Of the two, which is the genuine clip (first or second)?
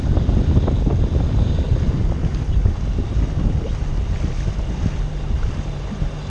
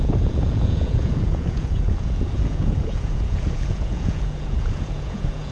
first